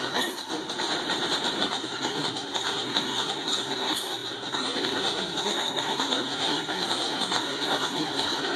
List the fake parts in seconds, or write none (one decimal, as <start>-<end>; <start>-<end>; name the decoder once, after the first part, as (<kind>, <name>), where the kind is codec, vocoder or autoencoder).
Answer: 0.0-0.5 (codec, SNAC); 1.6-8.6